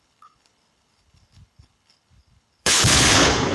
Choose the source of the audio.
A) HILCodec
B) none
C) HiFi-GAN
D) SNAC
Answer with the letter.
A